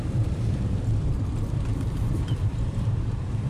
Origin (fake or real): fake